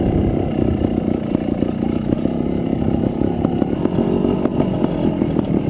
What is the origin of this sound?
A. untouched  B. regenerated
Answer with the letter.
A